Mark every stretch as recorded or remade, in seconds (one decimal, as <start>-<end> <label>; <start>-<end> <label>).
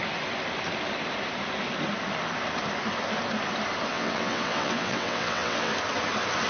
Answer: 0.0-3.9 recorded; 3.9-5.7 remade; 5.7-6.5 recorded